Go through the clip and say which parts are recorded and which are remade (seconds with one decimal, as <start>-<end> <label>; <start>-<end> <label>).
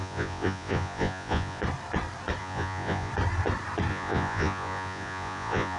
0.0-1.6 remade; 1.6-2.4 recorded; 2.4-3.1 remade; 3.1-3.9 recorded; 3.9-5.8 remade